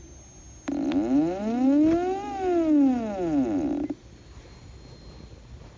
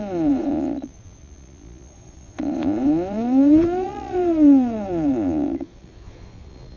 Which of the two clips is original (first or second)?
first